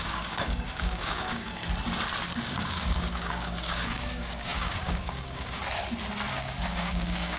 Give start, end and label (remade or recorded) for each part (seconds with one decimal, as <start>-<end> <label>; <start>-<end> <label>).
0.0-1.6 remade; 1.6-2.4 recorded; 2.4-5.6 remade; 5.6-6.3 recorded; 6.3-7.4 remade